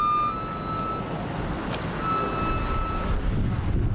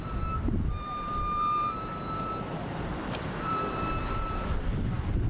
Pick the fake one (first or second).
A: second